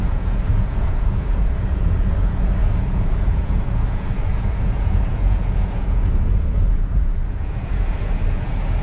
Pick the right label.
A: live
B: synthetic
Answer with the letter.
B